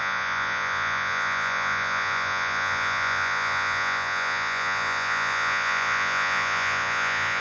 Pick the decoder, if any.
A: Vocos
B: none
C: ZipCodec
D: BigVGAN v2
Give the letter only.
A